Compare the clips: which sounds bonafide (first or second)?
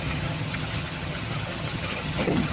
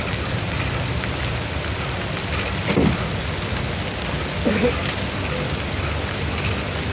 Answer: second